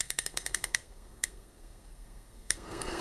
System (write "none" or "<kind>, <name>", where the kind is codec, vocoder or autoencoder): codec, SNAC